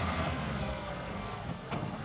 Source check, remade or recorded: remade